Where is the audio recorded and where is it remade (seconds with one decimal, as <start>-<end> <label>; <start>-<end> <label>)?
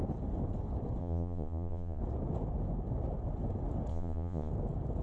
0.0-1.0 recorded; 1.0-2.0 remade; 2.0-3.9 recorded; 3.9-4.5 remade; 4.5-5.0 recorded